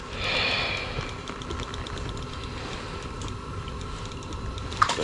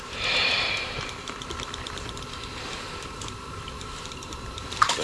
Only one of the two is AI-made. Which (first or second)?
second